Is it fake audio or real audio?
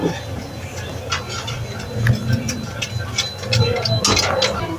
real